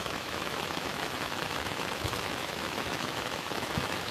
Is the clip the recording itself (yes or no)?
no